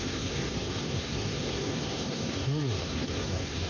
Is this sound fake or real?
fake